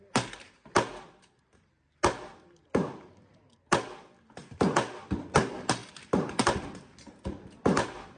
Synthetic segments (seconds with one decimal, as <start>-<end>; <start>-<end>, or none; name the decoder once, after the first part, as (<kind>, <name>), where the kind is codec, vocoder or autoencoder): none